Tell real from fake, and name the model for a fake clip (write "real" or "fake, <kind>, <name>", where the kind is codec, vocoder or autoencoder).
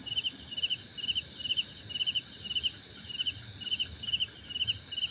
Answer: real